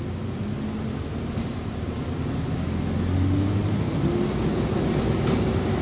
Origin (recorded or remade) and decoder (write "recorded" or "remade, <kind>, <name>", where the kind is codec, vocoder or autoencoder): recorded